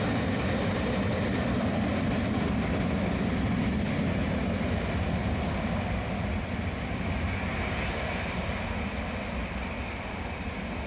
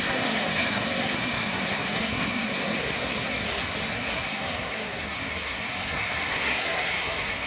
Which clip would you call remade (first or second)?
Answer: second